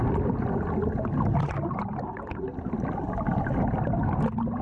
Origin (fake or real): real